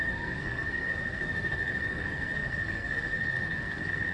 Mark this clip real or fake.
fake